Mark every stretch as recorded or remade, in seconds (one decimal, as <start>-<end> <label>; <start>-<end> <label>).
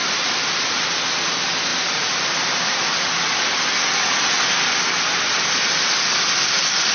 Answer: 0.0-6.9 recorded